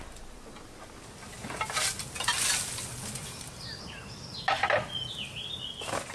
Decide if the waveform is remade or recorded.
recorded